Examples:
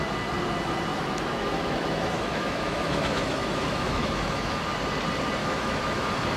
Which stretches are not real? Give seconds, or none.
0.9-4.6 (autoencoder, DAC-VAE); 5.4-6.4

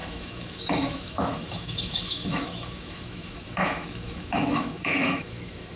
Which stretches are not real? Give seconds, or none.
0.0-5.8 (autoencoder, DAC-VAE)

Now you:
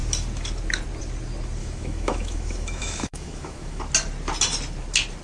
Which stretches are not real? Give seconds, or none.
1.6-3.8 (autoencoder, DAC-VAE)

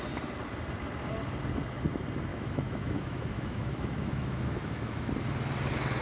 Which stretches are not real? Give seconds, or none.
2.3-5.1 (autoencoder, DAC-VAE)

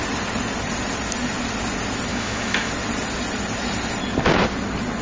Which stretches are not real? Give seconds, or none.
2.1-2.7 (autoencoder, DAC-VAE)

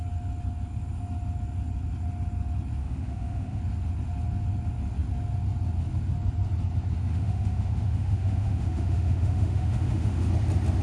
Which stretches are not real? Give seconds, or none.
2.8-3.6 (autoencoder, DAC-VAE); 7.1-10.3

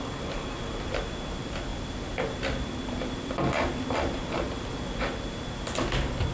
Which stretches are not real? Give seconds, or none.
none

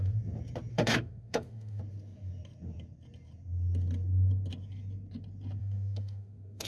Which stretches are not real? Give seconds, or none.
0.7-1.8 (autoencoder, DAC-VAE); 5.6-6.7